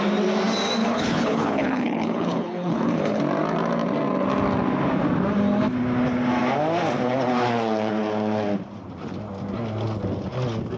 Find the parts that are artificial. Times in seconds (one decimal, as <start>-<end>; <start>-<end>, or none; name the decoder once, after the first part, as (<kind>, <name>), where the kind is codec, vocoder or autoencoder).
0.8-3.2 (codec, HILCodec)